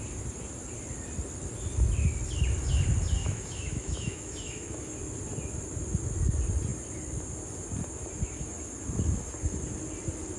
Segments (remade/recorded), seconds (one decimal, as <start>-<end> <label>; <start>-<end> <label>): 0.0-3.2 recorded; 3.2-5.0 remade; 5.0-10.4 recorded